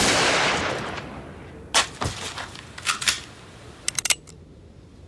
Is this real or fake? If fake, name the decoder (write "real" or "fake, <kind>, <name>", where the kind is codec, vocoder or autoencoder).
real